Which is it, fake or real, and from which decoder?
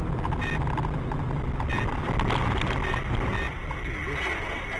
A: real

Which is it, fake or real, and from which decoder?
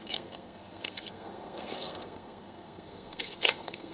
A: fake, codec, SNAC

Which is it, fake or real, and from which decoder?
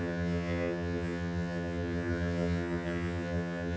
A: fake, vocoder, HiFi-GAN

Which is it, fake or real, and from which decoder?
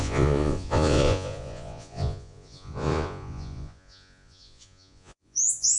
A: fake, vocoder, Vocos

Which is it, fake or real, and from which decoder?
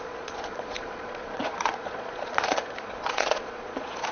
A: fake, vocoder, Vocos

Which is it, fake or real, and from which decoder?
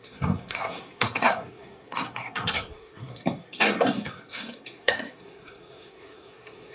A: fake, codec, SNAC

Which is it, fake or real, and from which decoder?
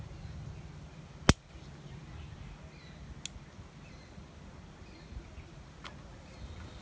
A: real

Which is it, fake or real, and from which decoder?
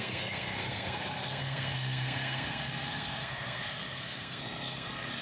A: fake, codec, SNAC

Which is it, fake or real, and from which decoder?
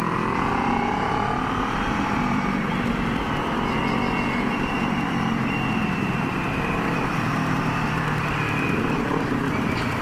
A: fake, vocoder, BigVGAN v2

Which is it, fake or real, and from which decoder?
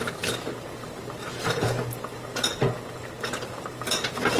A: fake, vocoder, BigVGAN v2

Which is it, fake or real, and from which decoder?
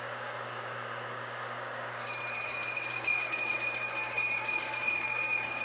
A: fake, codec, DAC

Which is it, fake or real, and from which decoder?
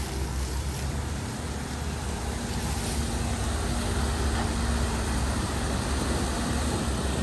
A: real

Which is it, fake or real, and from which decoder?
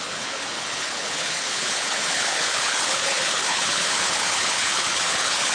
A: fake, codec, HILCodec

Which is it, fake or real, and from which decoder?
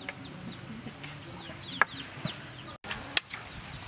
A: real